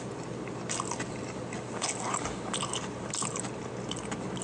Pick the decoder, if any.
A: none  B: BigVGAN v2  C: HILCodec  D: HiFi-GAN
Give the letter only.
A